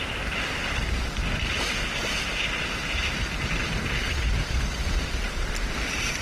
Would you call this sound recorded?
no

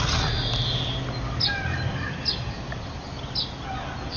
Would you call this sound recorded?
yes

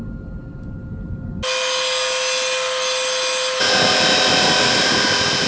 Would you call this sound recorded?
yes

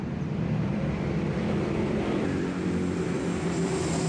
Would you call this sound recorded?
no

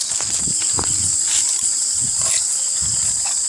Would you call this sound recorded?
yes